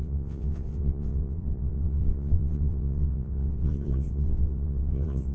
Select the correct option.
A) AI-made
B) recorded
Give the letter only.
A